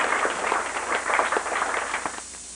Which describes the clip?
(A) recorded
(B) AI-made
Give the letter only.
A